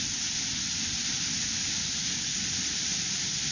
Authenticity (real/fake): real